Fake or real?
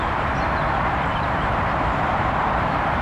fake